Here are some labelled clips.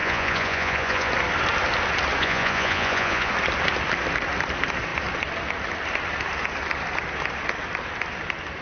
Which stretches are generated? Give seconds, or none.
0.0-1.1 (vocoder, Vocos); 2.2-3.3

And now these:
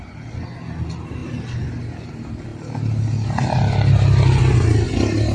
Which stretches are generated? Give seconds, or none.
none

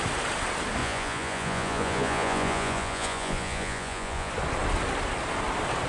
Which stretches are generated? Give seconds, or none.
0.8-4.3 (vocoder, Vocos)

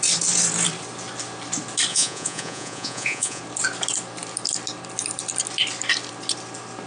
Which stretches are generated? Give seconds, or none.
1.9-3.4 (vocoder, Vocos)

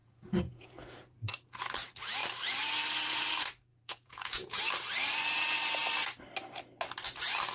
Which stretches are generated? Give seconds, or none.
0.0-1.3 (vocoder, Vocos); 3.7-4.6